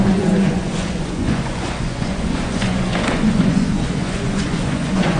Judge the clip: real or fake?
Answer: fake